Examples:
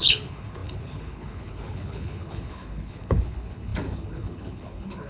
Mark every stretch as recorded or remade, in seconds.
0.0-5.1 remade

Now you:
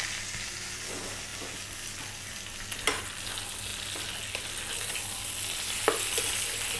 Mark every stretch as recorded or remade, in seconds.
0.0-6.8 recorded

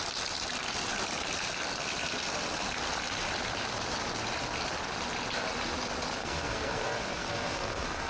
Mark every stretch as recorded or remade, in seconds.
0.0-6.2 recorded; 6.2-8.1 remade

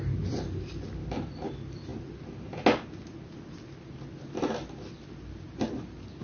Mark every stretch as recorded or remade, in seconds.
0.0-6.2 recorded